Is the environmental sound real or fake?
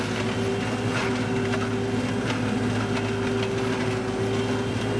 real